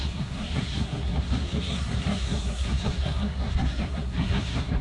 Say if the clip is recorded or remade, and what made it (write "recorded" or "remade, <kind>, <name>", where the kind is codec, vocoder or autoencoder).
remade, codec, SNAC